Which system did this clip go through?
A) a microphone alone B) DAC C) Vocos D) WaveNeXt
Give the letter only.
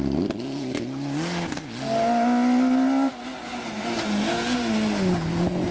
A